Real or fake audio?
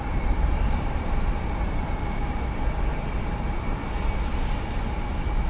real